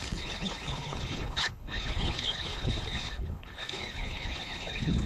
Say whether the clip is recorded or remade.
remade